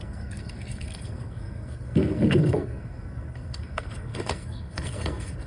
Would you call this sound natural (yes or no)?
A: no